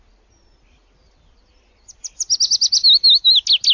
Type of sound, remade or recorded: recorded